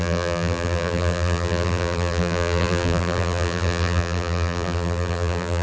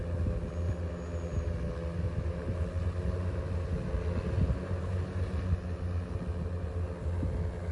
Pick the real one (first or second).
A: second